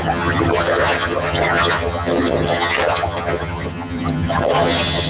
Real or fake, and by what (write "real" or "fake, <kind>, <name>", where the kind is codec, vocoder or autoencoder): fake, vocoder, HiFi-GAN